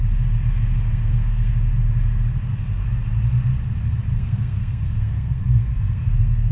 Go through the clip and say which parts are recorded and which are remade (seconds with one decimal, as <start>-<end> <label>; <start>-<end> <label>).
0.0-0.9 recorded; 0.9-1.5 remade; 1.5-4.1 recorded; 4.1-6.5 remade